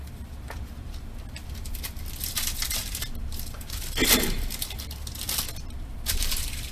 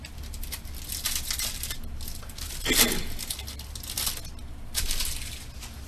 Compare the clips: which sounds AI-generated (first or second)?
first